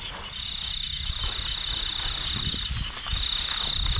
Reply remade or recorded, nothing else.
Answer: recorded